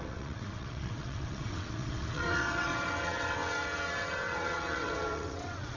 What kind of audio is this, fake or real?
fake